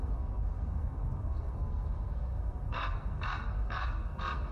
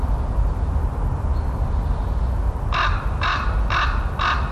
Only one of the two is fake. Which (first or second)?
first